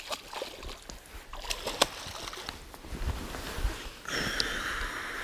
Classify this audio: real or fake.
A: real